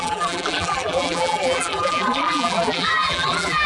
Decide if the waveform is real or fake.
fake